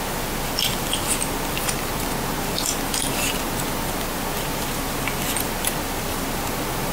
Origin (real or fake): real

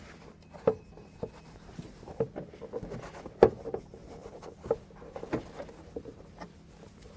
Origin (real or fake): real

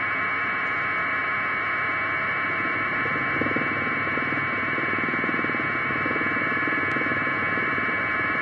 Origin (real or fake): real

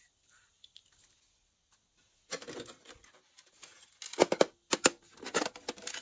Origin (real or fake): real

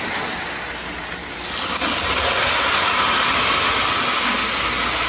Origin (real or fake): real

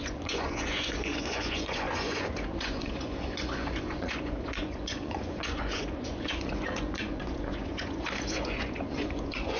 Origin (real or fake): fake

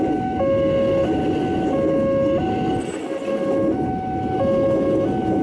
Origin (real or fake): real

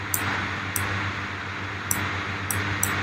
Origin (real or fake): real